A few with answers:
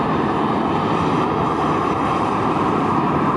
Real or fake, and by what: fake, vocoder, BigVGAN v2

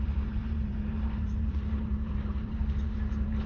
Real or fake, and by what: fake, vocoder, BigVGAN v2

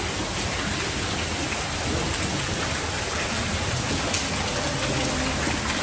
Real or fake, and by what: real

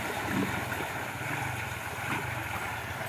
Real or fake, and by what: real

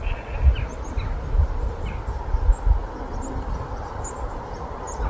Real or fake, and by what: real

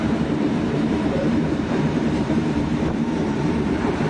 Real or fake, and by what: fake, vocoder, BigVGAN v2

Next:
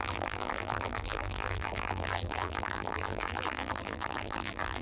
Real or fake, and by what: fake, vocoder, BigVGAN v2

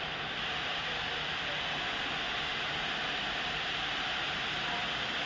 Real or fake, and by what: real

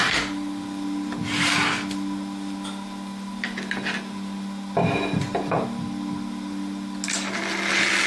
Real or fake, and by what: real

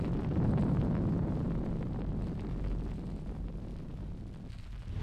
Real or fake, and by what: real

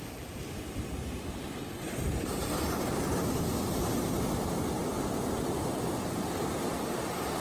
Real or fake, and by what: real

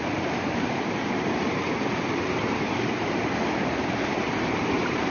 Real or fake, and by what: fake, vocoder, BigVGAN v2